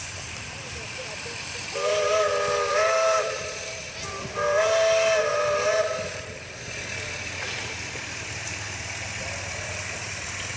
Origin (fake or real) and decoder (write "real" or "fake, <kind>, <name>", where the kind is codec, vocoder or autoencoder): fake, vocoder, BigVGAN v2